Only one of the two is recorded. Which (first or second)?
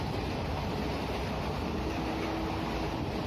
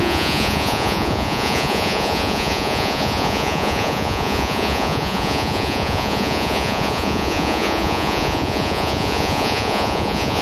first